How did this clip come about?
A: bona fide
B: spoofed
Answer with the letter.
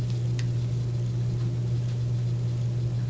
A